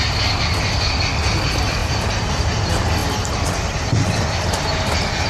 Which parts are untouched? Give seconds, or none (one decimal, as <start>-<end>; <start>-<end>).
0.0-5.3